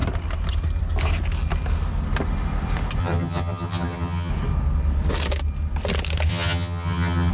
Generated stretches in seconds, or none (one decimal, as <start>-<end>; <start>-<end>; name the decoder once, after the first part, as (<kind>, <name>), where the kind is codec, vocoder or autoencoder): 3.0-4.3 (vocoder, HiFi-GAN); 6.3-7.3